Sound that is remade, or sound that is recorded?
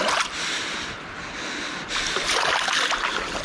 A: recorded